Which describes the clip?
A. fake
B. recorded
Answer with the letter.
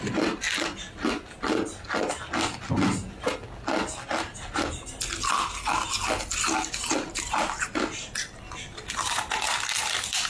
B